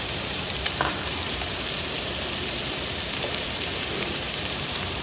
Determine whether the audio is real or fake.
fake